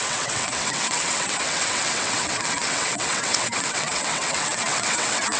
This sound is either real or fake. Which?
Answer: fake